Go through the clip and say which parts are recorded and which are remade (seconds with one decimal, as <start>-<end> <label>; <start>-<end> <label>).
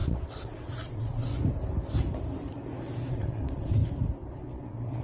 0.0-1.3 remade; 1.3-3.1 recorded; 3.1-3.8 remade; 3.8-4.3 recorded; 4.3-5.0 remade